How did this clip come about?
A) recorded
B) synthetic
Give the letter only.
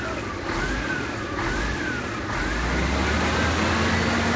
A